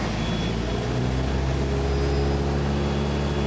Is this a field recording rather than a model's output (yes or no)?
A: yes